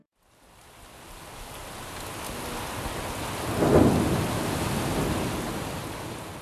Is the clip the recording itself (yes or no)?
yes